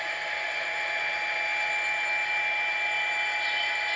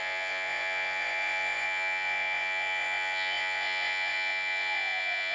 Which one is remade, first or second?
second